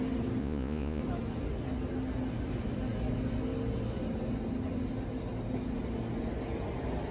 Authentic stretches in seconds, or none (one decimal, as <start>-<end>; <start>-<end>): 0.0-0.4; 1.0-7.1